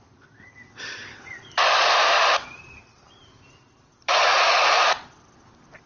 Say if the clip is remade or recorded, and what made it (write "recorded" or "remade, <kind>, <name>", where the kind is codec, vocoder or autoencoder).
remade, vocoder, BigVGAN v2